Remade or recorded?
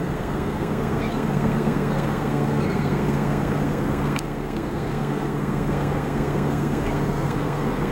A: remade